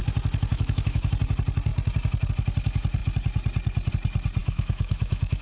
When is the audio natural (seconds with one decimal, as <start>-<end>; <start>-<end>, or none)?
0.0-0.5; 1.1-4.4